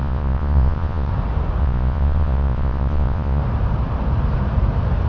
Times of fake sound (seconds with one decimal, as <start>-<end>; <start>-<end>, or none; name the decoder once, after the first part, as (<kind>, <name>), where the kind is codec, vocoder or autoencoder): 0.0-1.1 (vocoder, Vocos); 1.6-3.4